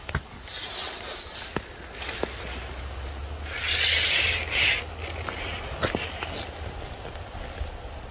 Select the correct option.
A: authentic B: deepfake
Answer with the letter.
A